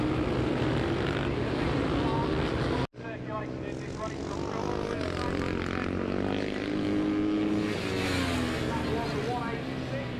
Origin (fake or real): real